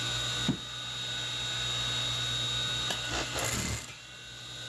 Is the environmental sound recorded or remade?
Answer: recorded